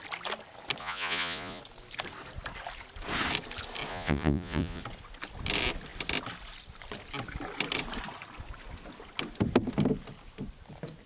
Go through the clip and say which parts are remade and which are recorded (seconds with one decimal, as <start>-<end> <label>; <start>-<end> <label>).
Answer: 0.0-0.8 recorded; 0.8-1.6 remade; 1.6-3.9 recorded; 3.9-4.8 remade; 4.8-11.1 recorded